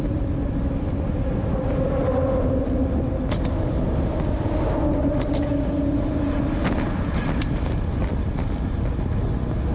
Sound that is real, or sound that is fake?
real